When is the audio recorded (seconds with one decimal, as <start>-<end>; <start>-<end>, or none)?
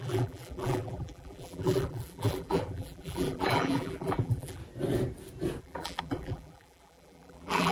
4.6-5.6